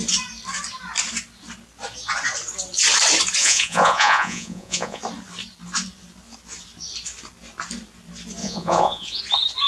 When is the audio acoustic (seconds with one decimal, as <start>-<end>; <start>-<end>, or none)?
0.0-3.4; 5.0-8.4; 9.2-9.7